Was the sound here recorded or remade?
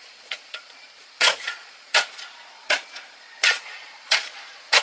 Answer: remade